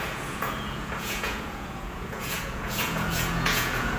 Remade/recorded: remade